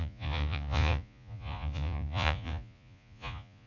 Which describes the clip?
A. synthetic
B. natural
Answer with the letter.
A